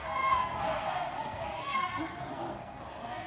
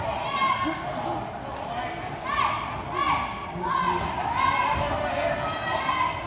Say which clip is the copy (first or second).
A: first